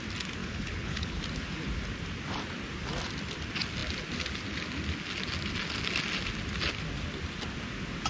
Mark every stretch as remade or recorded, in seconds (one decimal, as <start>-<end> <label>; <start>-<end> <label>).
0.0-0.4 recorded; 0.4-1.2 remade; 1.2-8.1 recorded